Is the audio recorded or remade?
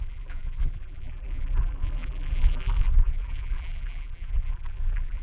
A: remade